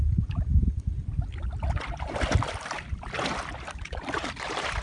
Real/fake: real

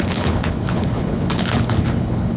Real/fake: fake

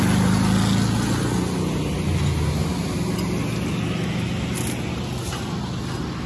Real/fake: real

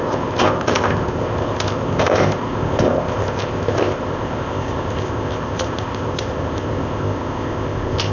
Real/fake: fake